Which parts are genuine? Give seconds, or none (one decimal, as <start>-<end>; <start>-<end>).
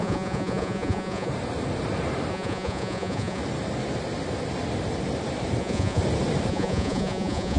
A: 1.3-2.3; 3.4-5.6; 6.0-6.5